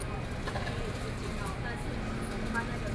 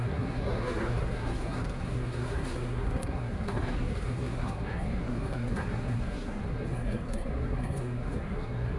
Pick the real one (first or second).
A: first